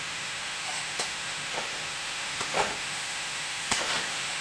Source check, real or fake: fake